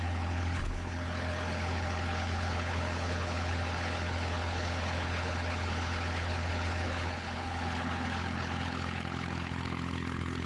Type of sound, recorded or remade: remade